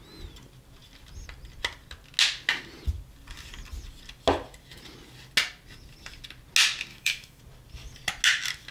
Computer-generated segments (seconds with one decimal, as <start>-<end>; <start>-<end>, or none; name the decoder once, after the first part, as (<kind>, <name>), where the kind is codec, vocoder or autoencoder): 6.9-7.4 (autoencoder, DAC-VAE)